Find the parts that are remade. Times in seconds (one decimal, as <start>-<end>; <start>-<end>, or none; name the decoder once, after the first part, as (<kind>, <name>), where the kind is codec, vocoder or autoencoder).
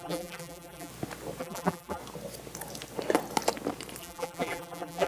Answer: 0.0-0.9 (vocoder, BigVGAN v2); 1.4-2.0; 4.0-5.1